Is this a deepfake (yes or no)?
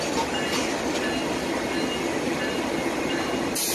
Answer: no